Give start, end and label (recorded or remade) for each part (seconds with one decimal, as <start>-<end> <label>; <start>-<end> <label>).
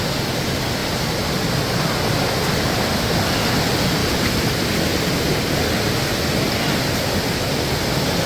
0.0-4.9 recorded; 4.9-5.6 remade; 5.6-8.3 recorded